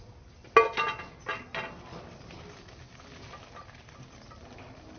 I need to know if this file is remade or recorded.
recorded